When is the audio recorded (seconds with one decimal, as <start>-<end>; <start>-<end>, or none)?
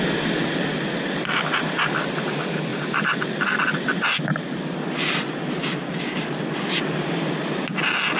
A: 0.0-8.2